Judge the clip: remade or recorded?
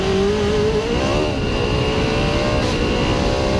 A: recorded